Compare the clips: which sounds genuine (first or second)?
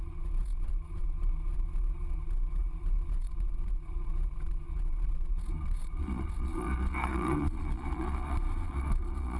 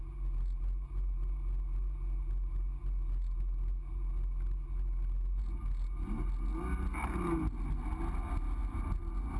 second